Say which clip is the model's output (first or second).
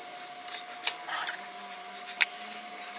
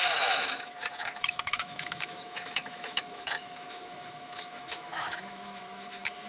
second